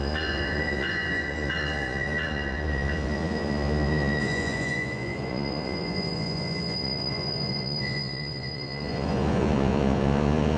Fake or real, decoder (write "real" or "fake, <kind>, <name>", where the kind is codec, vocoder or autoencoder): fake, vocoder, Vocos